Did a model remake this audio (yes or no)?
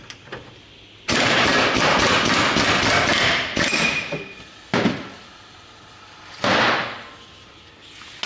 no